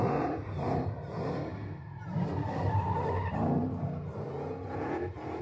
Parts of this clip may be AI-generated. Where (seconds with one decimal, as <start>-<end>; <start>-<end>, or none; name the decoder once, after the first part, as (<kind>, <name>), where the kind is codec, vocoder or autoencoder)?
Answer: none